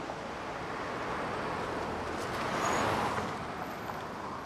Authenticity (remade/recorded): recorded